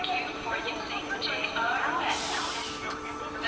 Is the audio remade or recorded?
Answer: remade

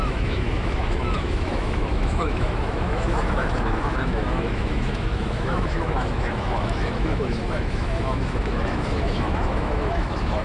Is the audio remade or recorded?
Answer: remade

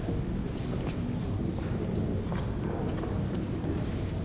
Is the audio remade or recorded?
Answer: recorded